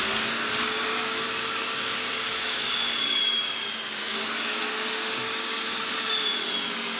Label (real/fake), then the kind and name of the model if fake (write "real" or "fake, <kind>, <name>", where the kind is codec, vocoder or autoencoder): fake, codec, DAC